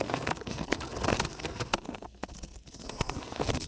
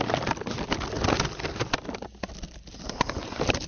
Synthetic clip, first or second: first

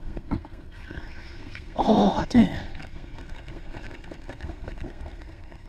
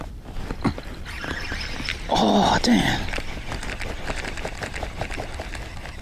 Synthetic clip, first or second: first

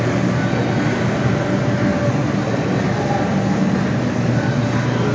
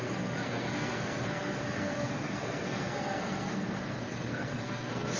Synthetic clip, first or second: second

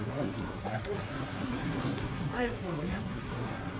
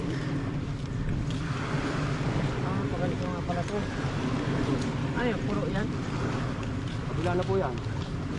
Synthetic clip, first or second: first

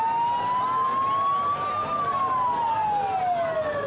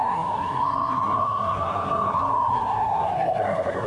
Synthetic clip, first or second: second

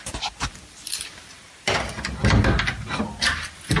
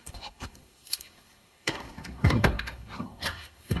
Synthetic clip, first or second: second